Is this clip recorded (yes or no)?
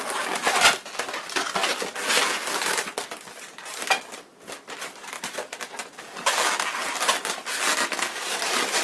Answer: yes